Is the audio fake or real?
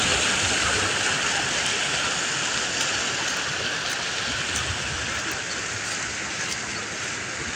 real